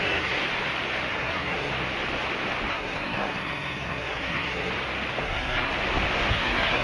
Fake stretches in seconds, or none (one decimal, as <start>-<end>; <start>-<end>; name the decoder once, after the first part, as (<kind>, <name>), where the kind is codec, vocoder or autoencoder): 0.0-0.4 (codec, SNAC); 1.1-1.7; 2.7-4.7; 5.2-5.7; 6.3-6.8